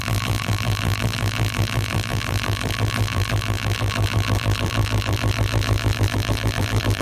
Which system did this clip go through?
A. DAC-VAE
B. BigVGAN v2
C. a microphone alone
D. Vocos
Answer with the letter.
B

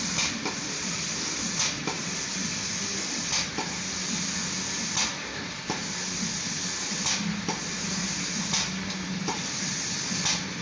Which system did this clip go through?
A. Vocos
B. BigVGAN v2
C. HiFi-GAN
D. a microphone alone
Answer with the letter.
D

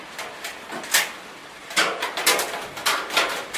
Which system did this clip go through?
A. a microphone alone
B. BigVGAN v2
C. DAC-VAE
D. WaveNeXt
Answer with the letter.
A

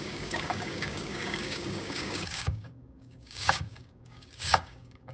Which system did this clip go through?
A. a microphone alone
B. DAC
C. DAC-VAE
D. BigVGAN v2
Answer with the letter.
B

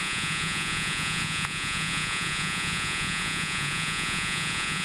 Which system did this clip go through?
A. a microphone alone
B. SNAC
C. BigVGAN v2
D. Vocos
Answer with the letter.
D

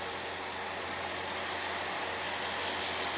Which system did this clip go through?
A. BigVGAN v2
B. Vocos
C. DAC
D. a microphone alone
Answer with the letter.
D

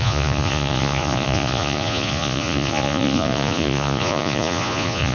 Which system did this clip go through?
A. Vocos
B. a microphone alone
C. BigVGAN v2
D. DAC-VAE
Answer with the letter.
A